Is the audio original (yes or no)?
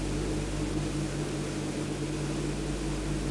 yes